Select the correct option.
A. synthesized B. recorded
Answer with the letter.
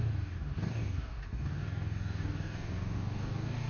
A